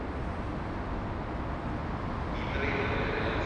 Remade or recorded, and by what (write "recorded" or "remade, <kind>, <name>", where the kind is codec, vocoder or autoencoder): recorded